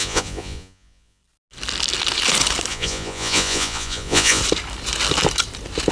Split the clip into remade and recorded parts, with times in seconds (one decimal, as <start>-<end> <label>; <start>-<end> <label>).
0.0-1.2 remade; 1.2-2.7 recorded; 2.7-4.4 remade; 4.4-5.9 recorded

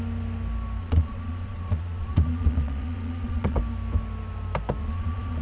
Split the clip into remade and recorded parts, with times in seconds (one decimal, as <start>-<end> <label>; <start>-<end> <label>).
0.0-0.8 recorded; 0.8-3.6 remade; 3.6-4.8 recorded; 4.8-5.4 remade

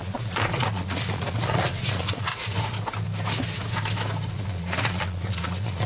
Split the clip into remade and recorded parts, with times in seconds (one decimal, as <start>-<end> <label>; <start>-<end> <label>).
0.0-2.3 remade; 2.3-4.3 recorded; 4.3-5.9 remade

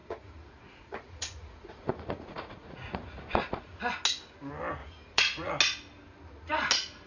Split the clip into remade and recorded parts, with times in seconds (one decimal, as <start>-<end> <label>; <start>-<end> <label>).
0.0-3.8 remade; 3.8-4.8 recorded; 4.8-5.5 remade; 5.5-7.1 recorded

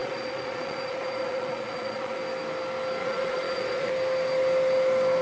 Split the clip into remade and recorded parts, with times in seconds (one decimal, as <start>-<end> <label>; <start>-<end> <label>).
0.0-2.2 remade; 2.2-3.0 recorded; 3.0-3.9 remade; 3.9-5.2 recorded